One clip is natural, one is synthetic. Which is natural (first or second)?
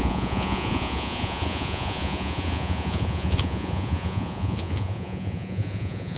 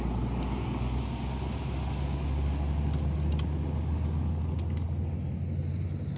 second